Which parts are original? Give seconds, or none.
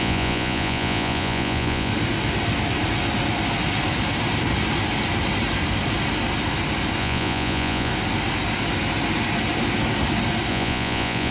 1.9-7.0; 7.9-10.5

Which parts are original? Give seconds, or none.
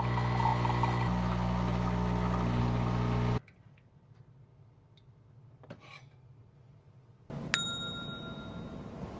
0.0-9.2